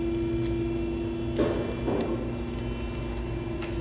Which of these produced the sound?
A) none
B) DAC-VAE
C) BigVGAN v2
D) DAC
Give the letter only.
A